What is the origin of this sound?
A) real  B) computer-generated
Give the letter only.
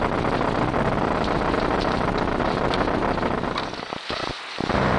A